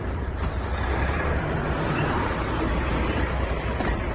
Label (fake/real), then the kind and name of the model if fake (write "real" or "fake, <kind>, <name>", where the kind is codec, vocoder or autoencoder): fake, vocoder, BigVGAN v2